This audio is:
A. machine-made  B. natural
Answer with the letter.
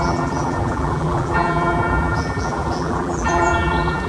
A